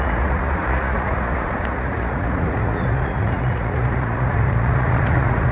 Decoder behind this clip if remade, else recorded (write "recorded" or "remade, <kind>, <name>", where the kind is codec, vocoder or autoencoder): remade, vocoder, Vocos